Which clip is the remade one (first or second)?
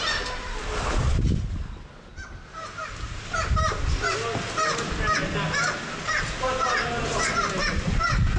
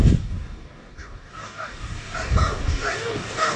second